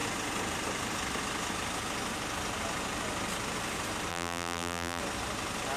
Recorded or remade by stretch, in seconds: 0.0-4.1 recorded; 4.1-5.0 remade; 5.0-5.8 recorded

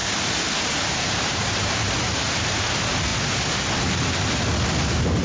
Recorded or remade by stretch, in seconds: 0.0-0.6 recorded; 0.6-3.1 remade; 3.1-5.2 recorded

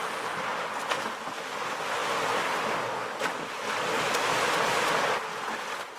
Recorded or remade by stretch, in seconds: 0.0-6.0 recorded

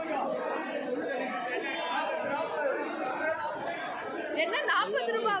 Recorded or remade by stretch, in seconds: 0.0-2.8 recorded; 2.8-3.9 remade; 3.9-5.4 recorded

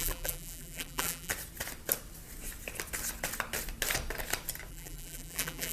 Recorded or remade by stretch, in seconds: 0.0-1.3 remade; 1.3-4.7 recorded; 4.7-5.7 remade

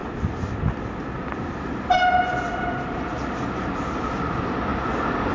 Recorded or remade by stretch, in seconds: 0.0-5.3 recorded

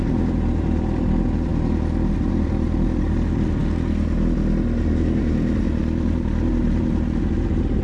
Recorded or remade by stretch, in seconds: 0.0-1.5 remade; 1.5-2.3 recorded; 2.3-3.6 remade; 3.6-5.2 recorded; 5.2-7.8 remade